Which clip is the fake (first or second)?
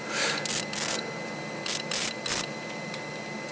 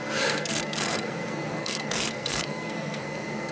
second